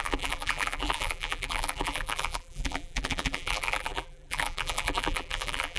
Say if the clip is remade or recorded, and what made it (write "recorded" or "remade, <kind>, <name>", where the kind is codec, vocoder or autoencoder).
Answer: remade, vocoder, BigVGAN v2